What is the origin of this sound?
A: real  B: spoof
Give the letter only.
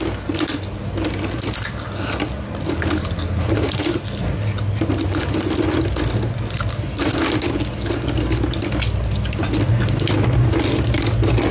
A